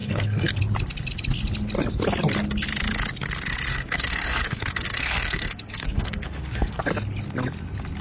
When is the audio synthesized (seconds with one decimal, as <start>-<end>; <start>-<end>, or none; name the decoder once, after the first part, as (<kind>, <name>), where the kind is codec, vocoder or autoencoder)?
0.0-0.6 (codec, SNAC); 3.7-6.8